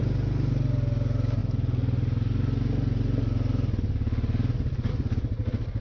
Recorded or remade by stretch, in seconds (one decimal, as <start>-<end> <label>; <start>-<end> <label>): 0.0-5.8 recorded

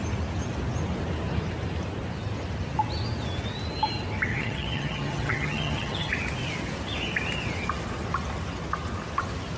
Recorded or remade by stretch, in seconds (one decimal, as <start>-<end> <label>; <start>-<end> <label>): 0.0-4.3 recorded; 4.3-6.1 remade; 6.1-9.6 recorded

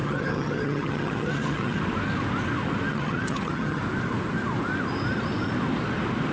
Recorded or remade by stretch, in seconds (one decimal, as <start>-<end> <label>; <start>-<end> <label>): 0.0-1.8 remade; 1.8-2.9 recorded; 2.9-3.8 remade; 3.8-6.3 recorded

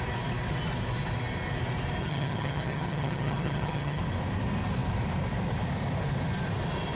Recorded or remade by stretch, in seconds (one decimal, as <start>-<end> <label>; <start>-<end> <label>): 0.0-2.0 recorded; 2.0-4.0 remade; 4.0-7.0 recorded

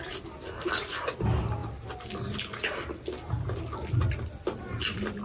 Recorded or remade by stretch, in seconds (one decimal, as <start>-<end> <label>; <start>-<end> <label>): 0.0-5.2 recorded